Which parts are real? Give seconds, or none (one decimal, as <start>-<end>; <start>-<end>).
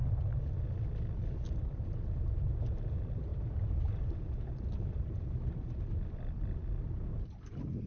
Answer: 0.0-3.3; 5.2-7.9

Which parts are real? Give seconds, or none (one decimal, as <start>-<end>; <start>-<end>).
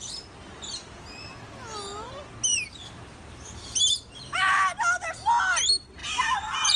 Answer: 0.0-2.5; 3.8-6.0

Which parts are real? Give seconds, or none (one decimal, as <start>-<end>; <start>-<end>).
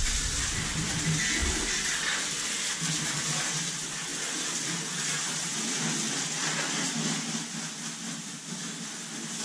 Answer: 0.0-1.4; 3.2-9.4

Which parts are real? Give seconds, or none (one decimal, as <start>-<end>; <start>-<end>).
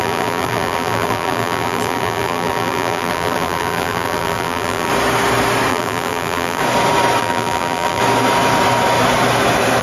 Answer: 4.9-5.7; 6.6-7.2; 8.0-9.8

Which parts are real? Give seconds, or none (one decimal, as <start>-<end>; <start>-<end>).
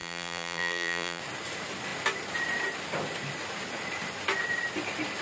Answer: 1.2-5.2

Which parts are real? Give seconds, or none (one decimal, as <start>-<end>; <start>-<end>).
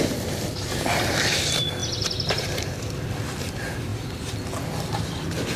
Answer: 0.0-3.9; 4.4-5.6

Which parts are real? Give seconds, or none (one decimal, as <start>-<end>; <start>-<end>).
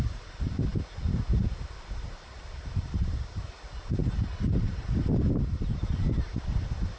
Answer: 0.0-4.0; 5.3-7.0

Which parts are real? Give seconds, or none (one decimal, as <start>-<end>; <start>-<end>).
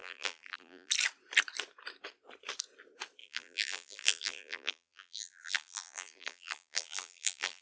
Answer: 0.9-3.2